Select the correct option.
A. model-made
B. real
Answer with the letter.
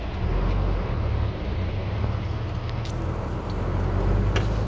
B